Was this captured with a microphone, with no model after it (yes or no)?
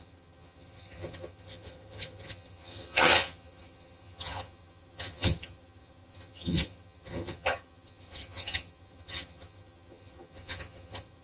no